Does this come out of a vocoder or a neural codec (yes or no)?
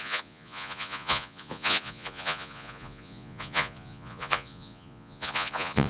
yes